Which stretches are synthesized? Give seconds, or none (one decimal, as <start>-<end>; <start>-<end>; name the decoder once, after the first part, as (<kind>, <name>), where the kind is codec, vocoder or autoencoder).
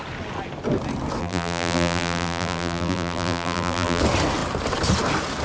1.2-4.0 (vocoder, BigVGAN v2)